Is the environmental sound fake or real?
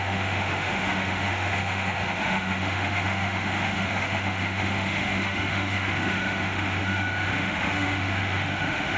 fake